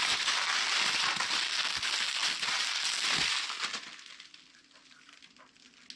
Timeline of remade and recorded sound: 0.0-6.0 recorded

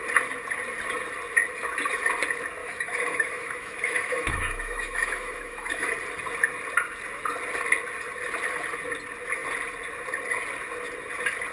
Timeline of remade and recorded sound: 0.0-2.6 recorded; 2.6-5.9 remade; 5.9-11.5 recorded

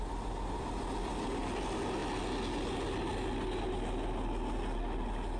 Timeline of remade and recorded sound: 0.0-5.4 recorded

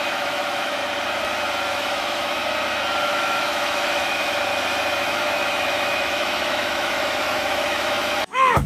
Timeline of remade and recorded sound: 0.0-0.8 remade; 0.8-1.7 recorded; 1.7-2.4 remade; 2.4-3.0 recorded; 3.0-4.5 remade; 4.5-5.0 recorded; 5.0-8.7 remade